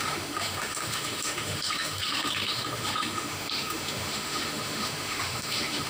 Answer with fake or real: fake